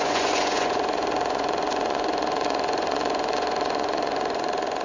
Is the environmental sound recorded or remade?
remade